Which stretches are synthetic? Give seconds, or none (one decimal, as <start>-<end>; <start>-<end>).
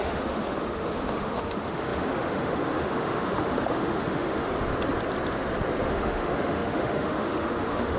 0.0-4.5; 5.8-8.0